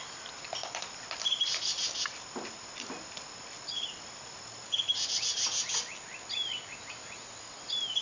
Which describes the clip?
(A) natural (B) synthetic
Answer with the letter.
A